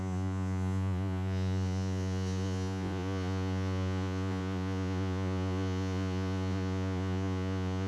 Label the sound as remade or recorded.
remade